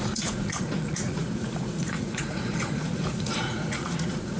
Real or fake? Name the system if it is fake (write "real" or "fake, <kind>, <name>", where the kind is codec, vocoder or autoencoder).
fake, vocoder, Vocos